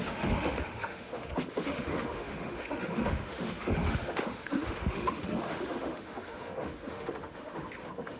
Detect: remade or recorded remade